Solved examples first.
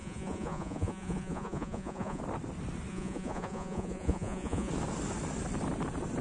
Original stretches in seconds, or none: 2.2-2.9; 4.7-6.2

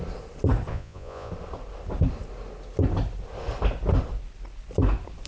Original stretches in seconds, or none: 0.0-0.7; 1.3-5.3

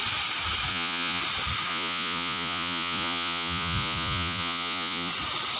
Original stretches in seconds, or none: 0.0-0.7; 1.2-1.7; 5.1-5.6

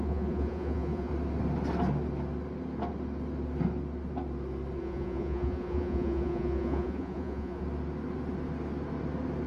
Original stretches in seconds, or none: 1.1-4.8; 7.6-9.5